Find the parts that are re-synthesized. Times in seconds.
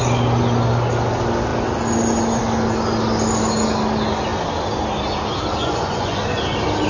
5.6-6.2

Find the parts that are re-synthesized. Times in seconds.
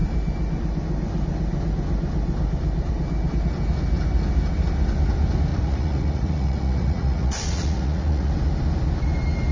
5.5-8.3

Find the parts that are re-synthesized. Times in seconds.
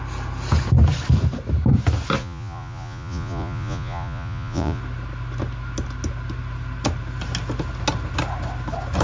2.2-4.8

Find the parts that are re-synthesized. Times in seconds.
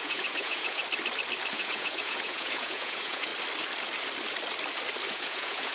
0.0-0.8; 1.5-3.3; 5.1-5.7